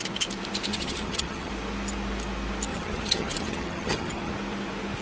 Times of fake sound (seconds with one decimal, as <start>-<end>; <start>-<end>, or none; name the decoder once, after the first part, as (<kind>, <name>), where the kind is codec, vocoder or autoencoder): 0.7-1.5 (vocoder, HiFi-GAN); 2.7-4.3